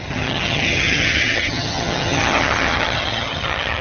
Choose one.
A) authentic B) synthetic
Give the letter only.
B